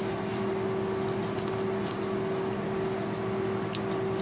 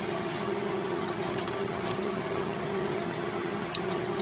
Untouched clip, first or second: first